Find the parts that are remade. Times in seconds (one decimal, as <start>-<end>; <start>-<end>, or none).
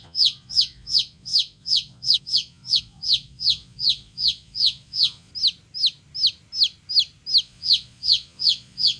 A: 0.0-5.3; 7.4-9.0